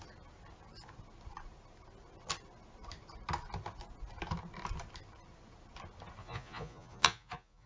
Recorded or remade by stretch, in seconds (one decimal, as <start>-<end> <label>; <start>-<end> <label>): 0.0-6.2 recorded; 6.2-7.7 remade